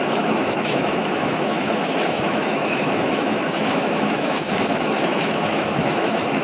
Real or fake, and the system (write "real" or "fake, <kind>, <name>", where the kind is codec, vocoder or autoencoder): fake, autoencoder, DAC-VAE